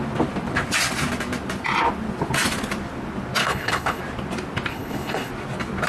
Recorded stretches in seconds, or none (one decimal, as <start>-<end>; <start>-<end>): 0.0-3.4; 4.0-4.7; 5.3-5.9